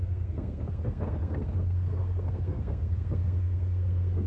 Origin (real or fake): fake